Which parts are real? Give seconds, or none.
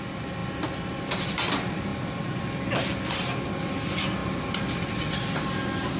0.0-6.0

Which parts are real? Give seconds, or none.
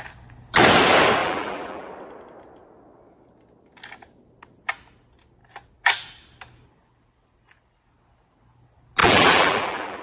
0.0-1.2; 1.9-9.0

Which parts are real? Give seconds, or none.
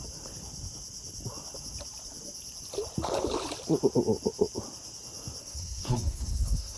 0.0-5.4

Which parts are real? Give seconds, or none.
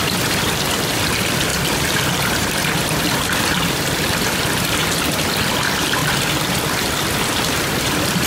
6.0-6.8